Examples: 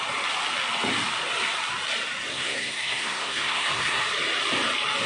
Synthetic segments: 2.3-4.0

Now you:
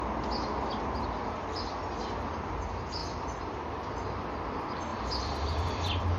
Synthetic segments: 4.9-6.2

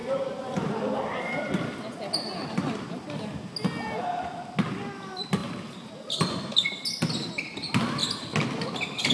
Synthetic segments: none